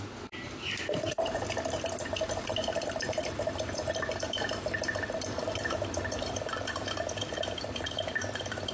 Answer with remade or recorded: remade